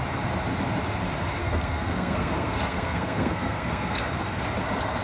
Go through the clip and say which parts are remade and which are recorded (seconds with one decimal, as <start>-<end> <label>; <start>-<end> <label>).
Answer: 0.0-1.4 recorded; 1.4-4.4 remade; 4.4-5.0 recorded